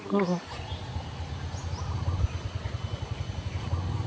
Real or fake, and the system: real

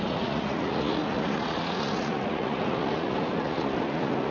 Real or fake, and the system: fake, vocoder, Vocos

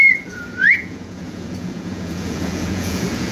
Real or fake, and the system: fake, vocoder, Vocos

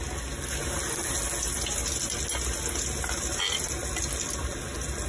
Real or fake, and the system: real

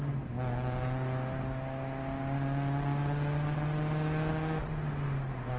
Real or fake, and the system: real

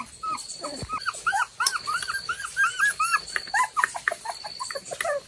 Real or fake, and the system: real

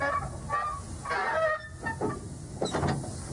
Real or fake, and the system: real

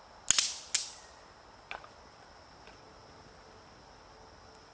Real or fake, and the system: real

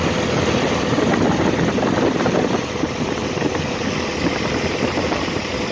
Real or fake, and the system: real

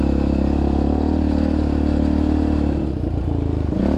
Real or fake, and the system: real